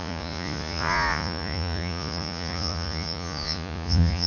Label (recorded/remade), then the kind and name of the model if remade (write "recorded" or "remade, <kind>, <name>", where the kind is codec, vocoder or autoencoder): remade, vocoder, Vocos